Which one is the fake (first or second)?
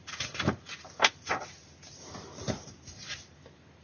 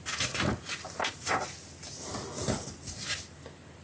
first